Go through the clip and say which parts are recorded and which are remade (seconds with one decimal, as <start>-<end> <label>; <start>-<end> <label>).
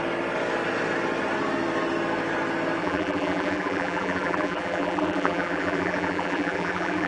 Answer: 0.0-2.8 recorded; 2.8-7.1 remade